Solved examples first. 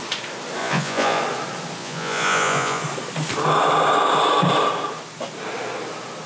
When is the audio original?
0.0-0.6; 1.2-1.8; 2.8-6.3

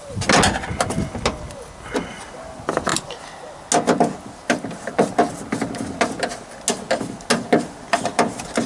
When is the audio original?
0.0-8.7